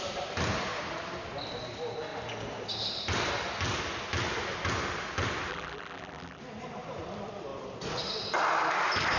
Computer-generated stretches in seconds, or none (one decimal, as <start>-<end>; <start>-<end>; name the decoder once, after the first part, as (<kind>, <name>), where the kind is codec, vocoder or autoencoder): 5.5-6.4 (vocoder, BigVGAN v2)